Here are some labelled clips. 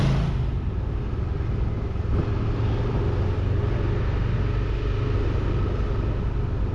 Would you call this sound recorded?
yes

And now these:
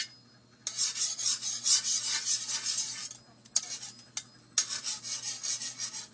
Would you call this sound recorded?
yes